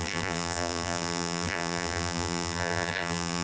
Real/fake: fake